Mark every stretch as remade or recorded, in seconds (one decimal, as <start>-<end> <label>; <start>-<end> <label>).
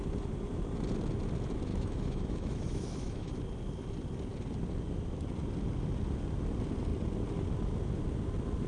0.0-1.7 recorded; 1.7-3.3 remade; 3.3-8.7 recorded